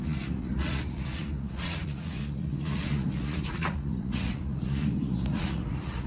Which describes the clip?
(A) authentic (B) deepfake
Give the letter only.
B